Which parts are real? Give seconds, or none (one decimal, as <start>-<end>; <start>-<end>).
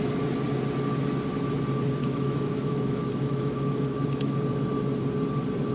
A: 0.0-2.0; 4.4-5.7